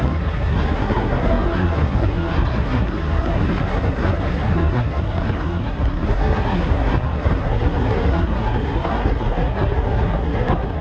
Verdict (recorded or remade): remade